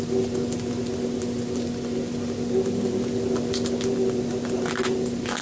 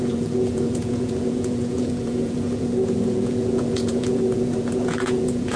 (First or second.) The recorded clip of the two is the first